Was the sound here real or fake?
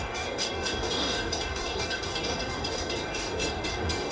fake